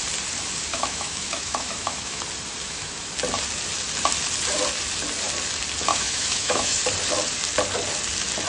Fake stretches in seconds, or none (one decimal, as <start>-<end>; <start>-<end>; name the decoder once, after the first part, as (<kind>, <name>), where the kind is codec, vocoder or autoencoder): 0.7-2.2 (autoencoder, DAC-VAE); 2.6-3.1; 5.9-6.8